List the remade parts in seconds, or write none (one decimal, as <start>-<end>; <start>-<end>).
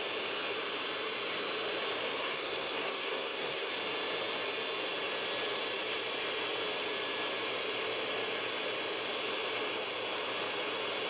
2.2-3.7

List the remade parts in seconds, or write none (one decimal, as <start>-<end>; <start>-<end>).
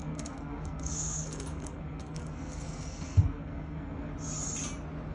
0.0-4.1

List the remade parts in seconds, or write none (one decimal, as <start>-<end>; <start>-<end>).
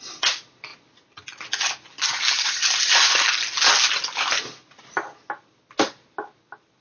none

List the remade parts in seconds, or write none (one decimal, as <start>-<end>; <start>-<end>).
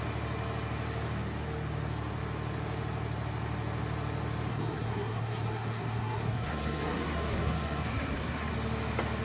4.5-8.5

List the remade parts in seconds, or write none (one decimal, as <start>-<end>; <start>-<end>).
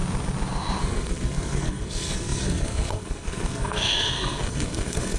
0.8-5.2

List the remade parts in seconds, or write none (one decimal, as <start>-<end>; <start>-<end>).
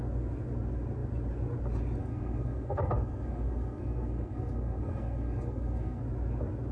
2.0-6.0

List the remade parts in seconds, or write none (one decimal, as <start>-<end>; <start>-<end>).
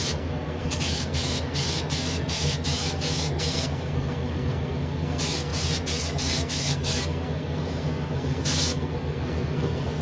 0.0-10.0